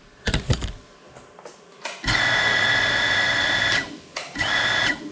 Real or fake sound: real